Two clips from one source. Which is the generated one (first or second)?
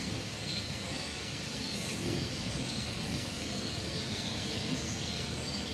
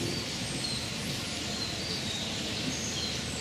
first